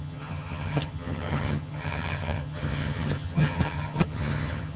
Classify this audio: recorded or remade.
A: remade